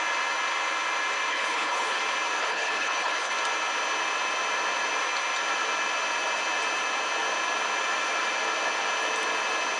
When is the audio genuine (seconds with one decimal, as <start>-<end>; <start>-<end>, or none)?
0.0-1.3; 2.0-2.4; 3.3-9.8